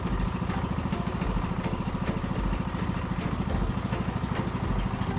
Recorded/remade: recorded